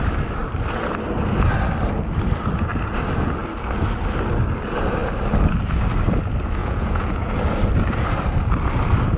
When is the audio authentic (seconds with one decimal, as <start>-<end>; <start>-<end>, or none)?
0.0-6.6; 7.4-9.2